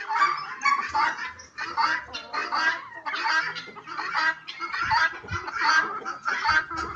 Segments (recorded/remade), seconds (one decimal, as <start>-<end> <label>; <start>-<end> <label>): 0.0-7.0 recorded